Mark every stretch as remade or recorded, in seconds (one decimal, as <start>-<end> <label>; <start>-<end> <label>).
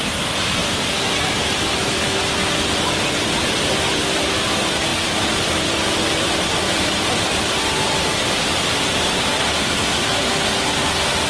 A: 0.0-0.6 recorded; 0.6-2.0 remade; 2.0-4.9 recorded; 4.9-9.6 remade; 9.6-11.3 recorded